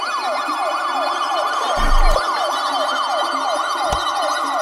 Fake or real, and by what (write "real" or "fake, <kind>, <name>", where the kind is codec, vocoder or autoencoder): real